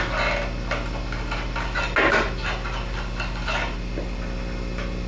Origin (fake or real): real